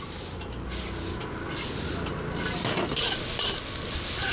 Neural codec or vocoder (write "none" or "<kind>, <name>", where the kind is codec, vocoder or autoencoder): none